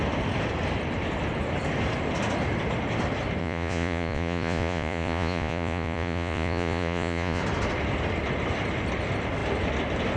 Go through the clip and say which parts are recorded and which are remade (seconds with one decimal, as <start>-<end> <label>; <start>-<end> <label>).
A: 0.0-3.4 recorded; 3.4-7.4 remade; 7.4-10.2 recorded